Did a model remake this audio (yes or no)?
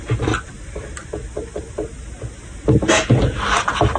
no